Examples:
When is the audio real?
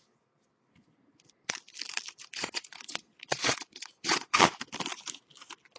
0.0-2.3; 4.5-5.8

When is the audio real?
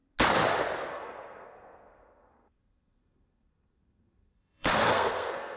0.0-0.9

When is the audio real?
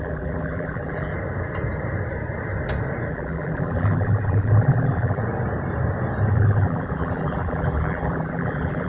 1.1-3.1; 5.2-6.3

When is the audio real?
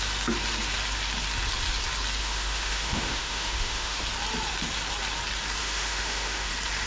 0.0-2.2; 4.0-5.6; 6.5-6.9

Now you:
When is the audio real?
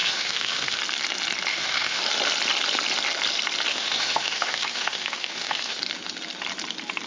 0.8-1.5; 2.0-3.7; 5.8-7.1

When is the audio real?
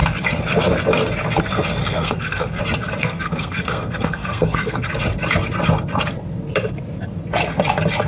0.0-1.8; 2.6-3.0; 4.9-8.1